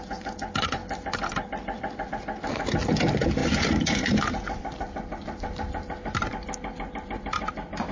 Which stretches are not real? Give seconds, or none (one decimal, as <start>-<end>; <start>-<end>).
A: none